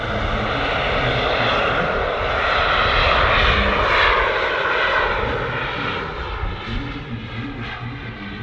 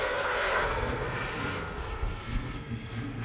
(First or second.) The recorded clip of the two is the first